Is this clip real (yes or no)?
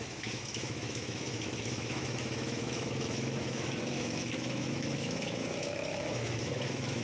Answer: no